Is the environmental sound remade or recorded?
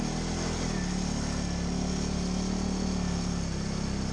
recorded